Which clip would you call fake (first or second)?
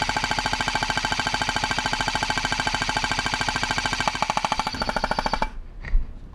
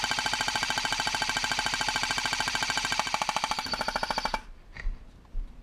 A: second